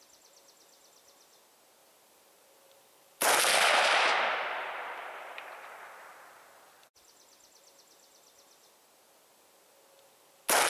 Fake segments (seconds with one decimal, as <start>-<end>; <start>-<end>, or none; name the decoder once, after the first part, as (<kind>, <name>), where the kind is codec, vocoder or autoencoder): 1.8-5.8 (vocoder, BigVGAN v2)